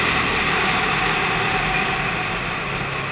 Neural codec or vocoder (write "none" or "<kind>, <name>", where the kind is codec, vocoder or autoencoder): none